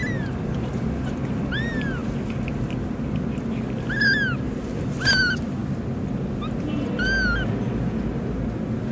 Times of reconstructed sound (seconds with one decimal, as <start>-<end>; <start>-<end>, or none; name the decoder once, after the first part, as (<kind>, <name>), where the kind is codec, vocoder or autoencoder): none